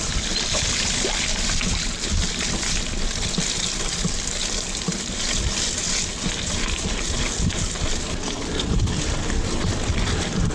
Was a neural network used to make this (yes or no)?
no